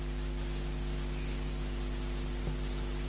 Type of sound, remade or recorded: recorded